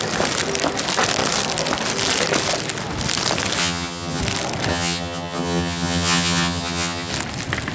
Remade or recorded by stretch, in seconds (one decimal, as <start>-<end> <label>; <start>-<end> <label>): 0.0-3.6 recorded; 3.6-4.2 remade; 4.2-4.7 recorded; 4.7-7.1 remade; 7.1-7.7 recorded